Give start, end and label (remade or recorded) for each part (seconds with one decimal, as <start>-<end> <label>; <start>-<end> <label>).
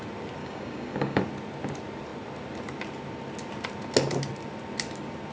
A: 0.0-0.4 recorded; 0.4-1.2 remade; 1.2-5.3 recorded